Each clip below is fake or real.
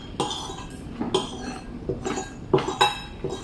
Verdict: real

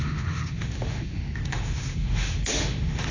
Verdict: fake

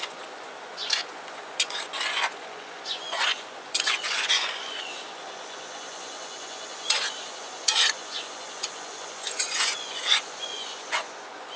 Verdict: fake